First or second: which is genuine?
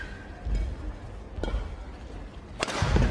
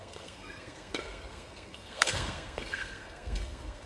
first